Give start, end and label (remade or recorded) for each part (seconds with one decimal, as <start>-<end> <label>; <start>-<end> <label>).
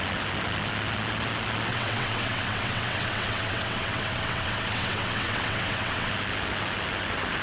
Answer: 0.0-1.7 recorded; 1.7-6.1 remade; 6.1-7.4 recorded